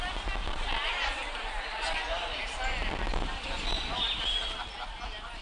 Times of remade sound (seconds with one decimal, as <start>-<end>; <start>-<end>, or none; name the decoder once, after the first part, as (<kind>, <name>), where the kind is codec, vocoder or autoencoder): none